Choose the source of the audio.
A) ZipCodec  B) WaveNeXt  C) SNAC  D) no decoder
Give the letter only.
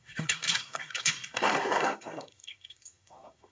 C